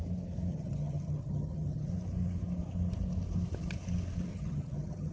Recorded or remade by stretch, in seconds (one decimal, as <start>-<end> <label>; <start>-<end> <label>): 0.0-0.5 recorded; 0.5-1.9 remade; 1.9-4.3 recorded; 4.3-5.1 remade

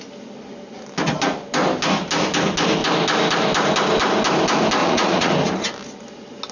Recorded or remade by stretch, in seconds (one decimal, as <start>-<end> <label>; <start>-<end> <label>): 0.0-4.8 recorded; 4.8-5.3 remade; 5.3-6.5 recorded

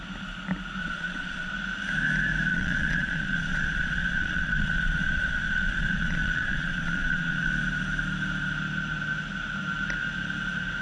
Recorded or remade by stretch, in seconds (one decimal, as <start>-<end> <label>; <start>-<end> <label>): 0.0-0.8 recorded; 0.8-1.5 remade; 1.5-2.5 recorded; 2.5-7.5 remade; 7.5-10.8 recorded

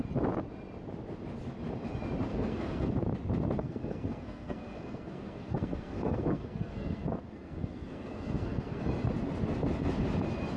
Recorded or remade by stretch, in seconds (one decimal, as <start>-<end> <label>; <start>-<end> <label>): 0.0-2.3 recorded; 2.3-2.9 remade; 2.9-3.6 recorded; 3.6-8.8 remade; 8.8-10.6 recorded

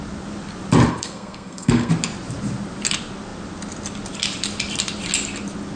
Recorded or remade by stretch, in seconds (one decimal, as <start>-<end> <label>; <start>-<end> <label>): 0.0-0.9 recorded; 0.9-1.9 remade; 1.9-5.8 recorded

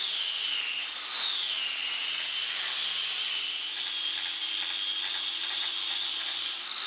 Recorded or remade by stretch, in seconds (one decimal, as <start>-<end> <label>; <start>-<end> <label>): 0.0-2.0 recorded; 2.0-4.5 remade; 4.5-5.4 recorded; 5.4-6.3 remade; 6.3-6.9 recorded

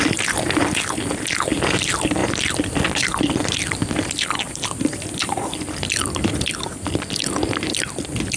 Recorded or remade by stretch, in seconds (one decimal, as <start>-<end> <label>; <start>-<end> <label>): 0.0-2.2 recorded; 2.2-6.3 remade; 6.3-8.4 recorded

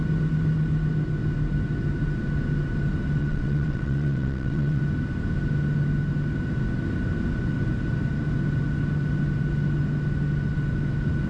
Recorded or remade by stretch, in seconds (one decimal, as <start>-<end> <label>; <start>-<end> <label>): 0.0-3.2 recorded; 3.2-4.8 remade; 4.8-11.3 recorded